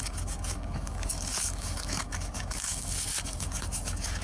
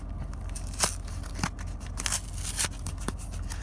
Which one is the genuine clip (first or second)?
second